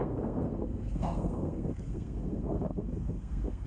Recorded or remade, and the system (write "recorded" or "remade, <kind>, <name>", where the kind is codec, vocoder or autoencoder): remade, codec, SNAC